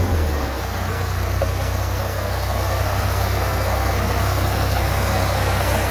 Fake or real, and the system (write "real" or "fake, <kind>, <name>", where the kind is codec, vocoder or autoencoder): fake, codec, SNAC